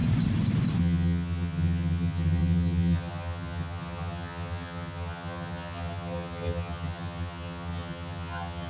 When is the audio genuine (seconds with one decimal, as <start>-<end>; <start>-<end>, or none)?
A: 0.0-0.8